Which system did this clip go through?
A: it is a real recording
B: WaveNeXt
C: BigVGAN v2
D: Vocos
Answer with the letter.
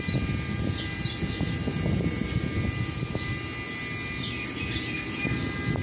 A